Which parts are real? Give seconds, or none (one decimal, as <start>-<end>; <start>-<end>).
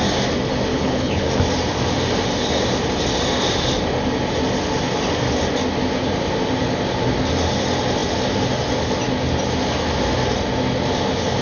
0.0-0.7; 1.3-11.4